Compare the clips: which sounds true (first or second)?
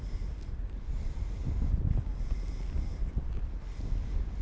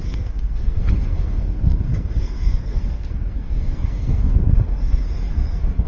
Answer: first